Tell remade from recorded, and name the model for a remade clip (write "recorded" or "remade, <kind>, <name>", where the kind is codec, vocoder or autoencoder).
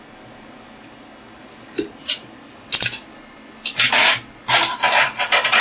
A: recorded